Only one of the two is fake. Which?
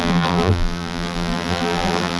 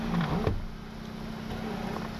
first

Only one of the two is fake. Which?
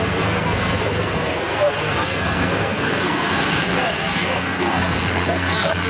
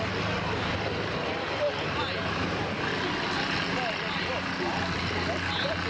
first